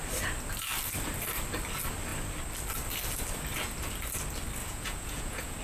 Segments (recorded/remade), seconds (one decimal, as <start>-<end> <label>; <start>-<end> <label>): 0.0-4.6 recorded; 4.6-5.6 remade